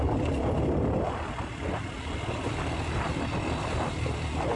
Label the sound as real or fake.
real